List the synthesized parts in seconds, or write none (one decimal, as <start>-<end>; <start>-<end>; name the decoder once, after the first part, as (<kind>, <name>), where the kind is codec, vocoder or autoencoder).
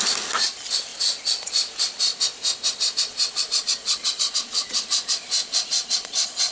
0.9-1.5 (vocoder, Vocos); 3.1-4.8; 5.4-6.5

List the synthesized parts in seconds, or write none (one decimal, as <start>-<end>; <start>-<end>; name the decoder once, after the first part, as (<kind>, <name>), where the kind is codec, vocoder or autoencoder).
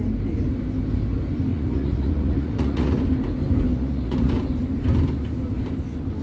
1.5-3.0 (vocoder, Vocos); 3.7-4.3